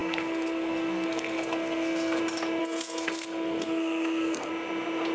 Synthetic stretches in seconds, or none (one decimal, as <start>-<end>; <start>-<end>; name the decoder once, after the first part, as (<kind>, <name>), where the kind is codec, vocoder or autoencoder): 0.0-2.2 (codec, SNAC); 2.6-4.5